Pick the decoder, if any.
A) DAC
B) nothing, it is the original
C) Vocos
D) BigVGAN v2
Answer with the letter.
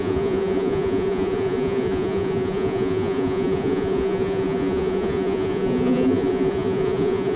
C